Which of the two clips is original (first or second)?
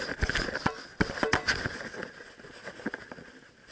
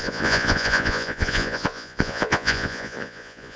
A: first